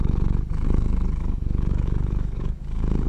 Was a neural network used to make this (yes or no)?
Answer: yes